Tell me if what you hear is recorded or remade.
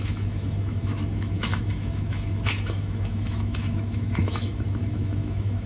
remade